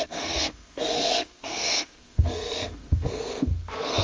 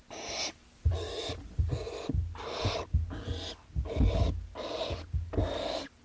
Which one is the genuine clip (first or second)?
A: second